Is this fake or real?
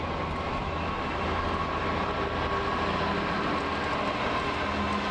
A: real